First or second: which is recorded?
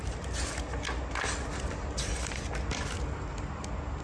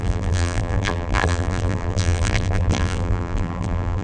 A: first